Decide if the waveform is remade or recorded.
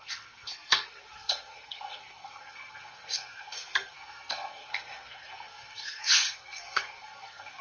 remade